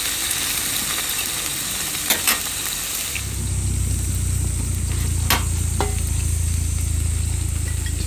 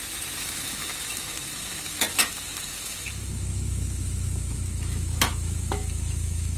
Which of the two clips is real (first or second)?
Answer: first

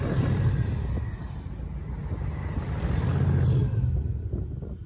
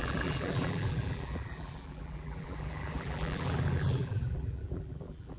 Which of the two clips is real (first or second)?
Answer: first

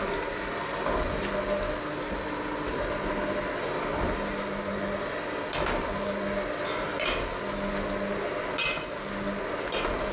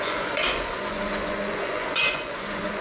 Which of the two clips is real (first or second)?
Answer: first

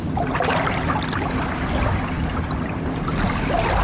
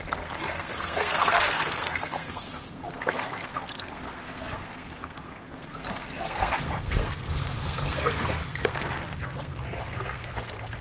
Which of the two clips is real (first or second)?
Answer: first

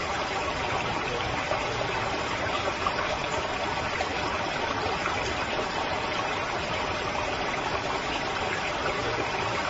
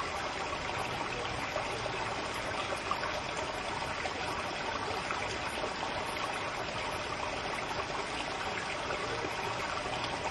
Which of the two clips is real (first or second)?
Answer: second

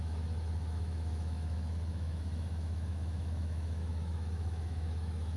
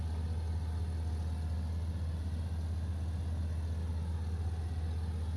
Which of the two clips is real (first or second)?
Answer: second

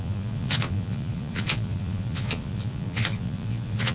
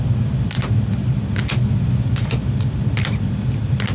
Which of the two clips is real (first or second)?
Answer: second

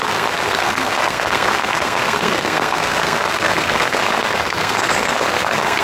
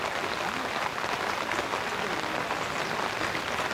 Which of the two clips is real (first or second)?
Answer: second